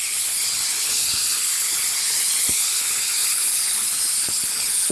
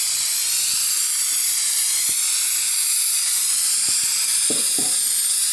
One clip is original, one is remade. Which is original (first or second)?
second